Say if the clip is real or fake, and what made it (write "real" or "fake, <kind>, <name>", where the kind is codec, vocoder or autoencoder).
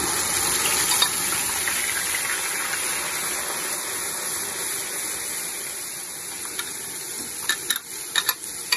real